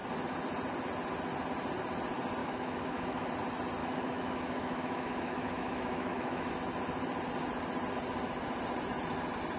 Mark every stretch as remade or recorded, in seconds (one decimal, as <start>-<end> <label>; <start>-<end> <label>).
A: 0.0-2.4 recorded; 2.4-3.3 remade; 3.3-3.8 recorded; 3.8-6.5 remade; 6.5-9.6 recorded